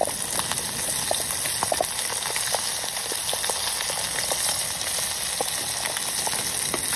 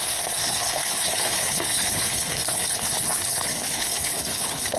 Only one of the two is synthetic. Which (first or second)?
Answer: second